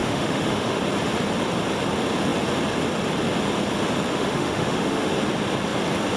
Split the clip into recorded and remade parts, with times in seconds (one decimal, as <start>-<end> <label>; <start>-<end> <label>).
0.0-0.8 remade; 0.8-4.1 recorded; 4.1-5.1 remade; 5.1-6.2 recorded